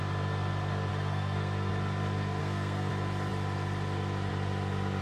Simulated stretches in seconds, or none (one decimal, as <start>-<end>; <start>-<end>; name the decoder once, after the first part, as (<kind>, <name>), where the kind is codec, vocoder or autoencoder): 0.9-1.7 (codec, SNAC); 2.4-2.9